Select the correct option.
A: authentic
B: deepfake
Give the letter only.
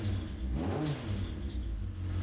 A